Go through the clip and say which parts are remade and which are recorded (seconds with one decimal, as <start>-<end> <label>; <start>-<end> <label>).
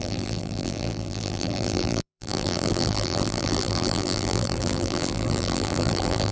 0.0-6.3 remade